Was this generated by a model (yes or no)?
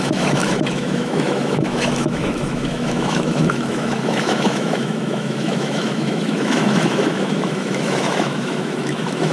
yes